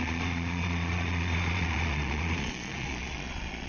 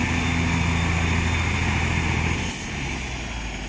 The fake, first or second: first